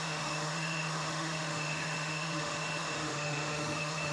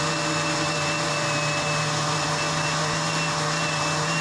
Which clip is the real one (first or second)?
second